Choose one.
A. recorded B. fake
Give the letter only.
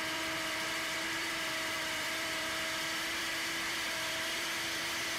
B